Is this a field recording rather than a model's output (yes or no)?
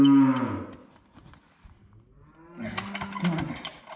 yes